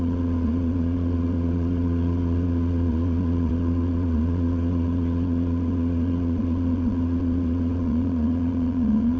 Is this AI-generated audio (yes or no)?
yes